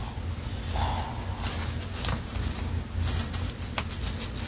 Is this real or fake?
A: real